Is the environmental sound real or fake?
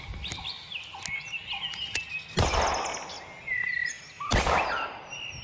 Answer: real